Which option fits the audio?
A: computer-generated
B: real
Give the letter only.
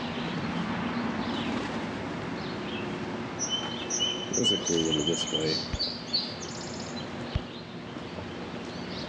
B